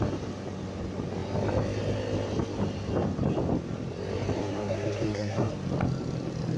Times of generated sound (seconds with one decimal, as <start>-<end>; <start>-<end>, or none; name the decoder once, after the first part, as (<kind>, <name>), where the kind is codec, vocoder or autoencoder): 4.4-5.5 (codec, SNAC)